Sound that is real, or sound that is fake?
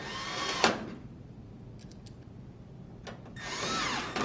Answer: real